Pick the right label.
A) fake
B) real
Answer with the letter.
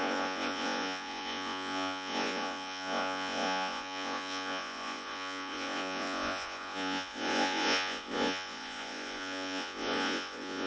A